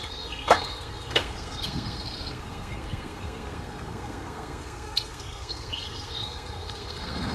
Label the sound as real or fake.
fake